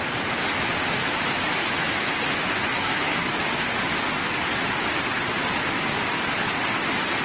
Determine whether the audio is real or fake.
real